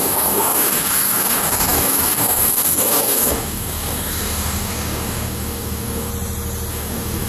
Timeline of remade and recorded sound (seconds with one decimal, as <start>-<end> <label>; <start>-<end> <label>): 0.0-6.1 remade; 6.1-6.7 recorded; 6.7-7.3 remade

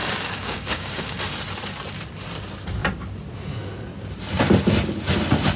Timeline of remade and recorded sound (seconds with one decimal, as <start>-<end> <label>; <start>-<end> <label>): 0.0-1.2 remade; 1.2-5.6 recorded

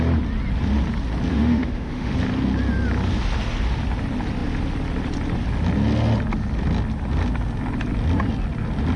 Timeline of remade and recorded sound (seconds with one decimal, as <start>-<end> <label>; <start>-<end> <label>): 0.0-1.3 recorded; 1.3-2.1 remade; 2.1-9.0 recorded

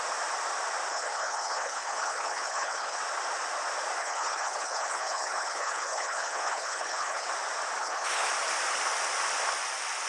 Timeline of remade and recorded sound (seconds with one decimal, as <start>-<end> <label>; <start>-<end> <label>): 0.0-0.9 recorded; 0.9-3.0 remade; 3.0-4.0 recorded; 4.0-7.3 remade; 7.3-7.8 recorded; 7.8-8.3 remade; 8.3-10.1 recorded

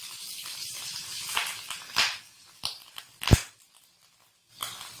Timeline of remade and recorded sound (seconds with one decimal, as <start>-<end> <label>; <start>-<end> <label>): 0.0-3.0 remade; 3.0-5.0 recorded

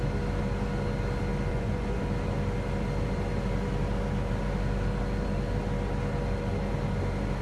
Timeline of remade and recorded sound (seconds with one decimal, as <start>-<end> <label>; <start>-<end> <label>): 0.0-1.5 recorded; 1.5-2.0 remade; 2.0-7.4 recorded